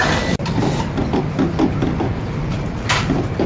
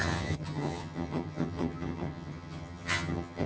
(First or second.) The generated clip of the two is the second